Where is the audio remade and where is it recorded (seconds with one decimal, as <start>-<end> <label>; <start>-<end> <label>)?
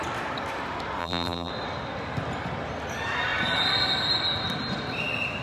0.0-1.0 recorded; 1.0-1.5 remade; 1.5-5.4 recorded